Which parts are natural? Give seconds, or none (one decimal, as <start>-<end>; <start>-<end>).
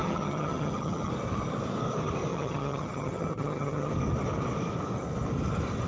1.1-2.3; 3.9-5.9